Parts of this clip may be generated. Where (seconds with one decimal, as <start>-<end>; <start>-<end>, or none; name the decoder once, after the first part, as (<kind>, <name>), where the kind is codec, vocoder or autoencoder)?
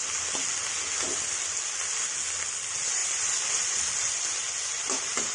none